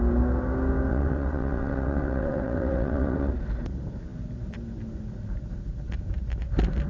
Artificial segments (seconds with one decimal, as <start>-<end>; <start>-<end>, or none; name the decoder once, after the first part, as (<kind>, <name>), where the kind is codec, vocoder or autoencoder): 0.9-3.3 (vocoder, WaveNeXt)